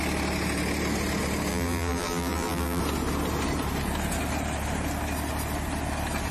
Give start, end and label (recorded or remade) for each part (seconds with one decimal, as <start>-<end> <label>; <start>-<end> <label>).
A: 0.0-1.5 recorded; 1.5-2.8 remade; 2.8-6.3 recorded